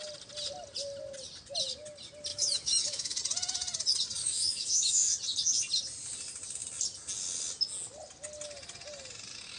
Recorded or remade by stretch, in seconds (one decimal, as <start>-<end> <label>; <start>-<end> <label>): 0.0-2.3 recorded; 2.3-3.2 remade; 3.2-4.2 recorded; 4.2-5.1 remade; 5.1-9.6 recorded